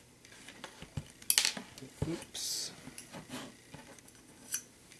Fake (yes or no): no